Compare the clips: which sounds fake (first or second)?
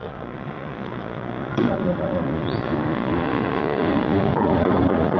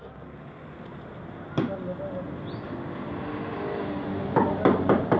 first